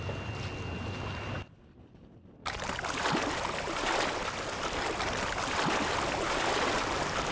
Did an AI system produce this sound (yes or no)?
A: no